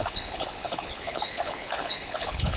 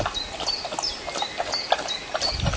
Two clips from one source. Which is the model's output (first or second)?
first